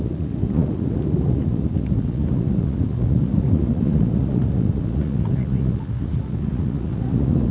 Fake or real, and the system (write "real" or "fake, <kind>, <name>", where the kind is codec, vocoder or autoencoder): fake, vocoder, Vocos